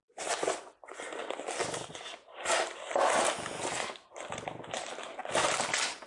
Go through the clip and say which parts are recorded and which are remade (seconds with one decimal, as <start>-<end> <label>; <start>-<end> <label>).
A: 0.0-1.2 recorded; 1.2-3.3 remade; 3.3-5.2 recorded; 5.2-6.1 remade